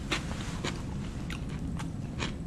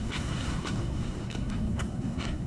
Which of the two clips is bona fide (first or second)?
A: first